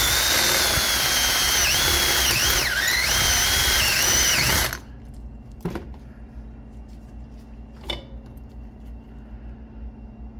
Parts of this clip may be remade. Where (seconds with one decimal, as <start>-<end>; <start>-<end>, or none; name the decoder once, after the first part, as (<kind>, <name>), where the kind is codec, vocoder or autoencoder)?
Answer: none

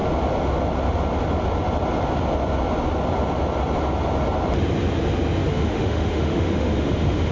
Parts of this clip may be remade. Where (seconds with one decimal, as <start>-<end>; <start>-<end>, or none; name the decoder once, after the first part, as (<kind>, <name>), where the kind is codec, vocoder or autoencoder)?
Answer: 5.5-7.3 (autoencoder, DAC-VAE)

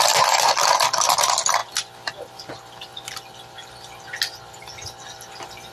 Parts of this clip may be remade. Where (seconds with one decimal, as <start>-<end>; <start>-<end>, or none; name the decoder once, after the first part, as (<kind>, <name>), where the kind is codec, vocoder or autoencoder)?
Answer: none

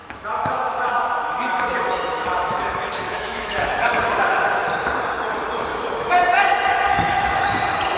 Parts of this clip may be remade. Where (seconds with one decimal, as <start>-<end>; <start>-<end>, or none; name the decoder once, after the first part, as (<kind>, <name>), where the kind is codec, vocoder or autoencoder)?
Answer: 0.0-4.6 (autoencoder, DAC-VAE); 5.7-6.2; 6.9-7.5

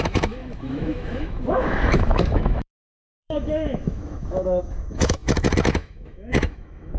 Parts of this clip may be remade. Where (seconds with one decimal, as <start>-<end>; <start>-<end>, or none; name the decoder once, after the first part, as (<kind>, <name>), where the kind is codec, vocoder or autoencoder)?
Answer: 0.0-7.0 (autoencoder, DAC-VAE)

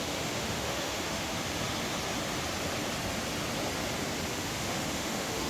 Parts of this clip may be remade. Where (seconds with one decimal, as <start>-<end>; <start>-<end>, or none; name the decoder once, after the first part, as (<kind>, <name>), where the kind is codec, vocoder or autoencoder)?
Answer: 0.0-1.3 (autoencoder, DAC-VAE); 4.3-5.5

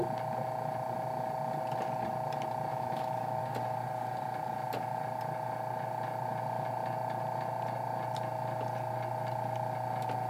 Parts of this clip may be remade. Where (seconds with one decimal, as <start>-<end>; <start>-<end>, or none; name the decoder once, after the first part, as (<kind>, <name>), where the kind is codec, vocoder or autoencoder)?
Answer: 2.7-3.4 (autoencoder, DAC-VAE)